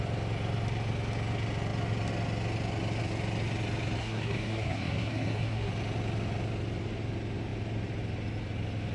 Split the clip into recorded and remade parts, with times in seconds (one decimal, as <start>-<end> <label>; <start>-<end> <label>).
0.0-4.0 recorded; 4.0-5.7 remade; 5.7-8.9 recorded